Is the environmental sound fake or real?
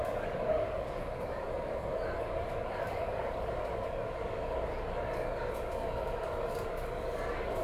fake